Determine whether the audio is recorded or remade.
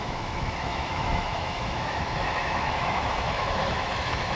remade